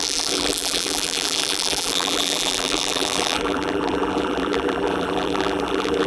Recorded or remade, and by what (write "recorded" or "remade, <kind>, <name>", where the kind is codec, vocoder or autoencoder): remade, vocoder, BigVGAN v2